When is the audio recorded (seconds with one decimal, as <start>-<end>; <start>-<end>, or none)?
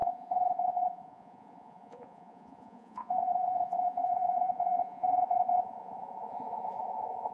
none